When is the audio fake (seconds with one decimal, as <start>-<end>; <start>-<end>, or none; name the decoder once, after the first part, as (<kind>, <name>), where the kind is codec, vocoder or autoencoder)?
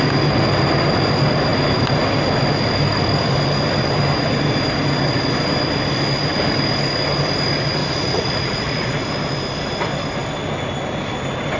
7.8-9.0 (vocoder, Vocos)